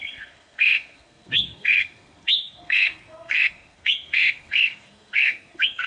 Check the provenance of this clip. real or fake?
fake